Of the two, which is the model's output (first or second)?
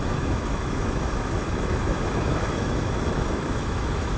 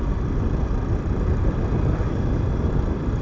first